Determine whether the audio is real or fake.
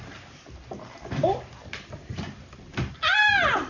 real